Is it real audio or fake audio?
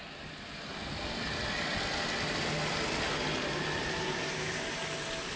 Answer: real